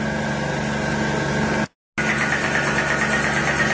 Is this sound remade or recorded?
recorded